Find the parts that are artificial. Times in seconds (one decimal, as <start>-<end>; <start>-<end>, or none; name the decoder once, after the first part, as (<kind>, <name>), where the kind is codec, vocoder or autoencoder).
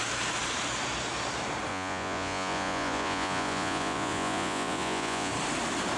1.7-5.3 (vocoder, Vocos)